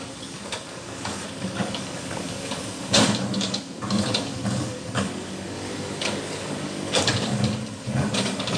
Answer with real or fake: fake